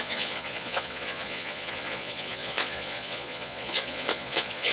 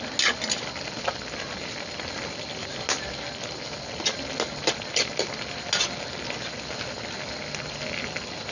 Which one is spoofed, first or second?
first